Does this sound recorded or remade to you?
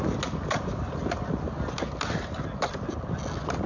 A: recorded